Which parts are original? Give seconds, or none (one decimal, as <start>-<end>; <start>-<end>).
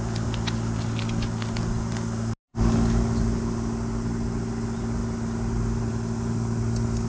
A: 0.0-7.1